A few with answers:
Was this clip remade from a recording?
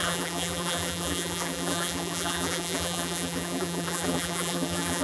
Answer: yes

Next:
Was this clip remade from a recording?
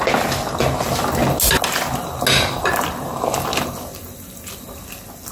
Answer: no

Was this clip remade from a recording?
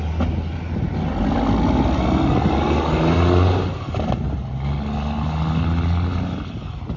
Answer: no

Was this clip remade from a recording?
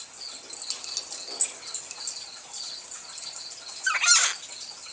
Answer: no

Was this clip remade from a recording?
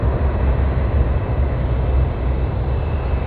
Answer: no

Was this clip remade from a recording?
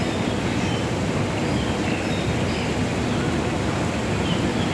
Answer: no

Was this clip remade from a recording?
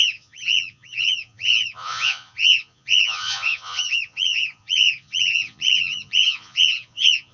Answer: yes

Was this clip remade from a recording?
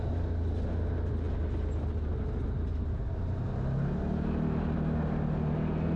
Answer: no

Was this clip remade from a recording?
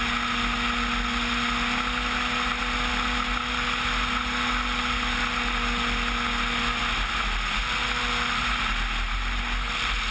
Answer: no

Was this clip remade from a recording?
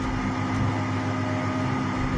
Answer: no